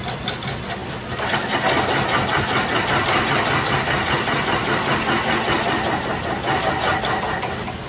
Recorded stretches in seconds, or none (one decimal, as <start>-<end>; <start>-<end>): 0.0-7.9